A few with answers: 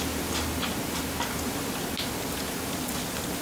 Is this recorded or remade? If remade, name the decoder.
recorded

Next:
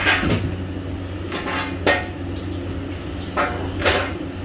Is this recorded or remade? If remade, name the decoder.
recorded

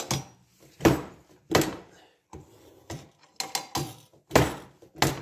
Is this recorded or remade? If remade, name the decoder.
recorded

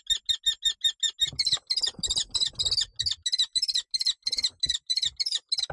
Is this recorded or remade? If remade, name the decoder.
recorded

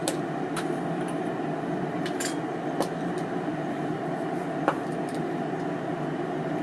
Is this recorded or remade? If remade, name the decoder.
recorded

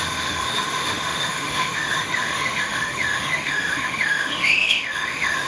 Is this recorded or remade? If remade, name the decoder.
remade, autoencoder, DAC-VAE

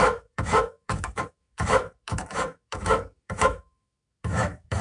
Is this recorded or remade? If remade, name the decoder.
remade, autoencoder, DAC-VAE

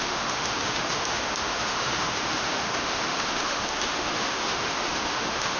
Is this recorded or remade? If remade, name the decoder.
remade, autoencoder, DAC-VAE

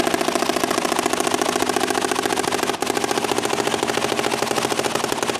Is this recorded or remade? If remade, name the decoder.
recorded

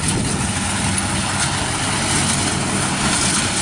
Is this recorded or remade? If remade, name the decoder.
recorded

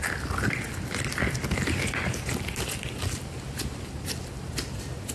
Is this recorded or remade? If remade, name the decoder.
recorded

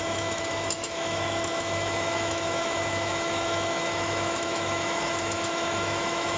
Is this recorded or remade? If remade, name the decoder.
remade, autoencoder, DAC-VAE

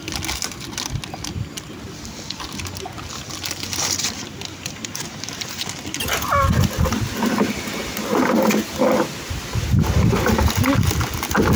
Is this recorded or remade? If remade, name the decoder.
recorded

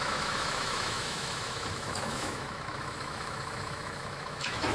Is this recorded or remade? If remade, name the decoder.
remade, autoencoder, DAC-VAE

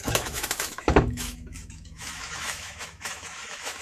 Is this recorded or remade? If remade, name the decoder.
remade, autoencoder, DAC-VAE